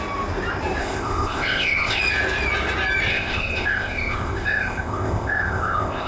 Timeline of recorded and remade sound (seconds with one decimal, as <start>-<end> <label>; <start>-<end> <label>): 0.0-0.8 recorded; 0.8-2.0 remade; 2.0-3.1 recorded; 3.1-6.1 remade